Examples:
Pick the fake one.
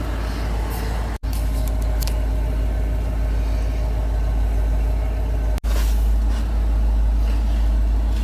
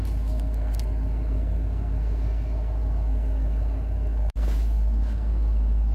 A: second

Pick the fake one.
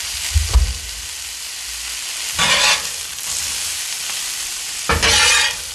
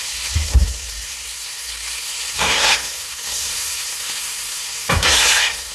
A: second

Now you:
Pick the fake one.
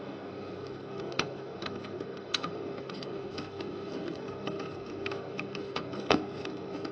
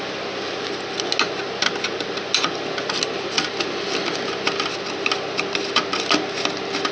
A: first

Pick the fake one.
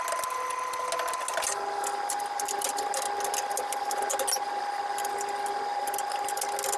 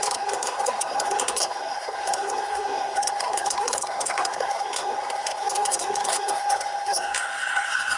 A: second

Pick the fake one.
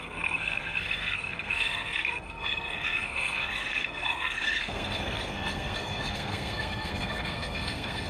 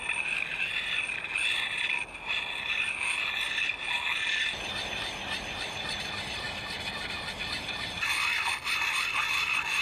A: first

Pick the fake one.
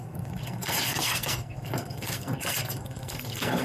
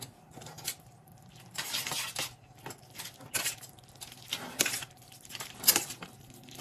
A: first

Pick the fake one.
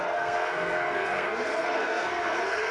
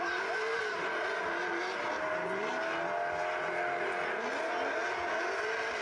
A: first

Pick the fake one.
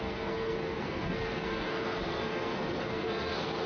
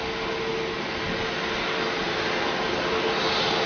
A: first